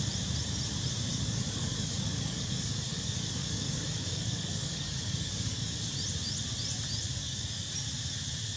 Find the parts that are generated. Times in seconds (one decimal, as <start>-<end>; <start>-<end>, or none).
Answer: 1.1-5.9; 7.2-7.7